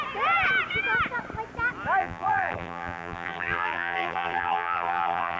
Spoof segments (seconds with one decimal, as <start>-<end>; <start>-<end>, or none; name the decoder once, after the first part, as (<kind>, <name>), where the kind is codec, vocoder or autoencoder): 2.0-5.4 (vocoder, BigVGAN v2)